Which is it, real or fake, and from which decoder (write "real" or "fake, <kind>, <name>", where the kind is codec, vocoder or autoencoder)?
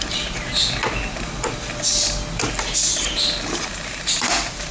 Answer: real